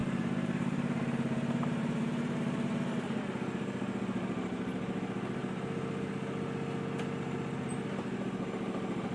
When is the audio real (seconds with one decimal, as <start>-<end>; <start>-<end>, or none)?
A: 2.7-5.4; 6.1-9.1